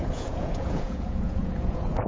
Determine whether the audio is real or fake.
fake